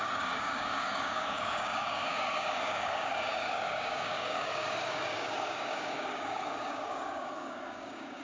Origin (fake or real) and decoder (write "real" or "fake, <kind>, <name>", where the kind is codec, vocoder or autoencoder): fake, codec, DAC